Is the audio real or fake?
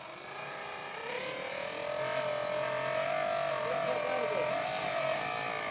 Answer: real